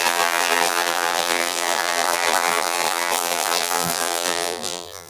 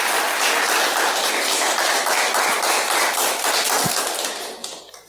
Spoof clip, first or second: first